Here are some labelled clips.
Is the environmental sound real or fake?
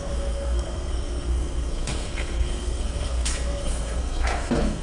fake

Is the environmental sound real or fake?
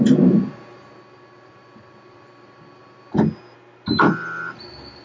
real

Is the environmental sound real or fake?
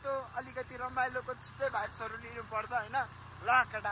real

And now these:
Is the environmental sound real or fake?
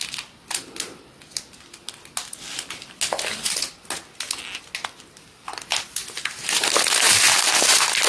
real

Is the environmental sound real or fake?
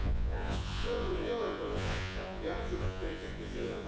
fake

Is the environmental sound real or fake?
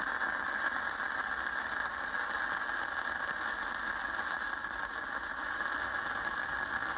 real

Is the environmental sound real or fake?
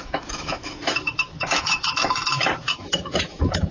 fake